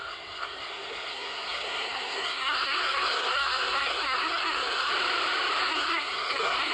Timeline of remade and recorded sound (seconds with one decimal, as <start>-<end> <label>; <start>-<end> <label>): 0.0-4.9 remade; 4.9-5.6 recorded; 5.6-6.7 remade

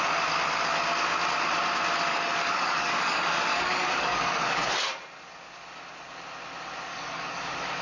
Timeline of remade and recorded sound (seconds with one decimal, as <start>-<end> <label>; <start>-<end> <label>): 0.0-2.1 recorded; 2.1-4.7 remade; 4.7-6.9 recorded; 6.9-7.8 remade

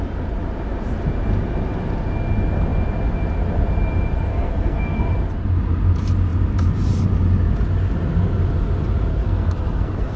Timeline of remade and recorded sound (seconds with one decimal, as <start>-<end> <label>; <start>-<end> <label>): 0.0-4.3 recorded; 4.3-5.0 remade; 5.0-9.1 recorded; 9.1-10.2 remade

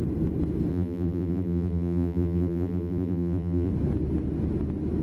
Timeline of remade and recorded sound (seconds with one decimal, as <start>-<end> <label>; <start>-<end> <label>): 0.0-0.7 recorded; 0.7-3.7 remade; 3.7-5.0 recorded